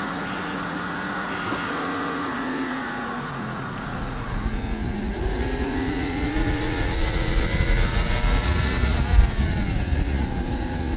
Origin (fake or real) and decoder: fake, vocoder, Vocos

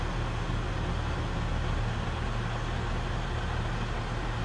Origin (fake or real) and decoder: real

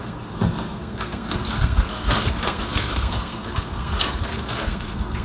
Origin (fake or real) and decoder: fake, codec, SNAC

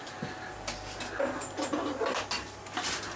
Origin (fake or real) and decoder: real